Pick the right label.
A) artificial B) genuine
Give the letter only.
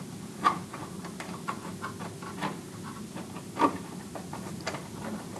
B